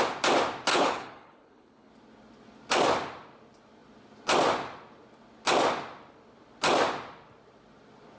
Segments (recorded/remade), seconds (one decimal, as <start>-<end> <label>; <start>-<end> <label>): 0.0-0.7 recorded; 0.7-1.9 remade; 1.9-8.2 recorded